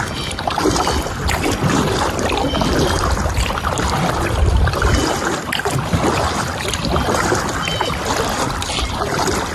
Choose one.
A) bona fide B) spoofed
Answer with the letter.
A